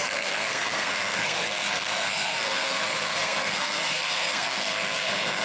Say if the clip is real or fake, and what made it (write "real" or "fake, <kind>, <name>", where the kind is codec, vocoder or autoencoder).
fake, codec, SNAC